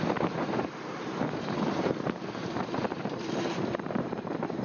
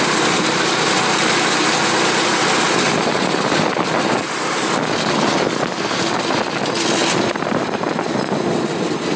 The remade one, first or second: first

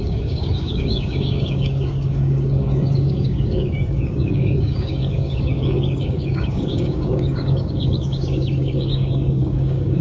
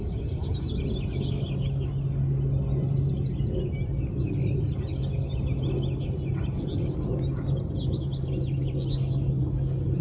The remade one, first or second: first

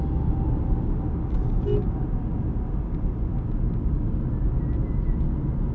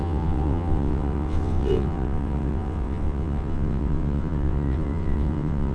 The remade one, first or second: second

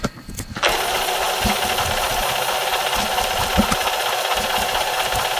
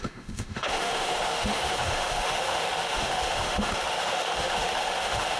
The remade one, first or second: second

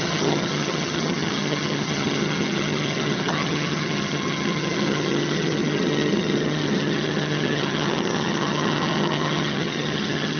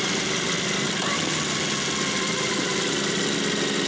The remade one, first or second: first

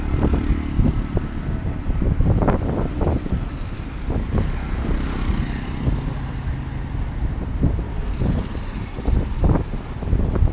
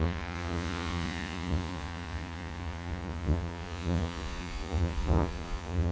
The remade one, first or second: second